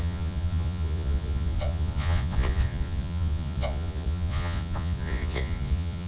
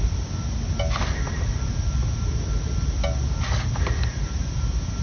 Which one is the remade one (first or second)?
first